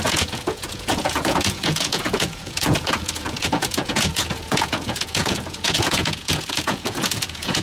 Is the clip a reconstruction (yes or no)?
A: yes